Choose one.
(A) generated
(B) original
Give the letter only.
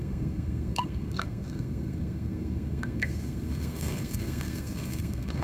A